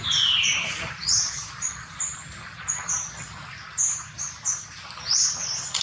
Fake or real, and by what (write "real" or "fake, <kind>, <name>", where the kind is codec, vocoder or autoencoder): real